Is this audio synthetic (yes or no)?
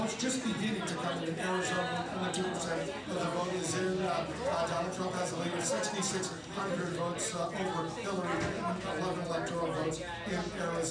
no